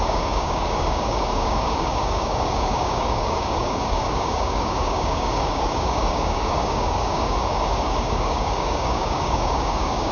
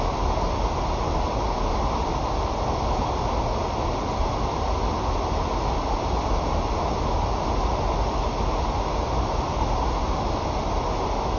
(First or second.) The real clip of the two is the second